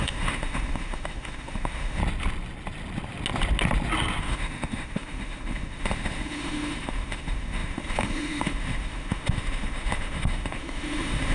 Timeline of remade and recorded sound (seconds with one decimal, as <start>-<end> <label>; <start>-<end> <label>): 0.0-2.0 remade; 2.0-4.2 recorded; 4.2-11.3 remade